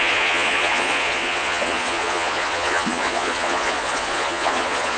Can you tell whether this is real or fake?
fake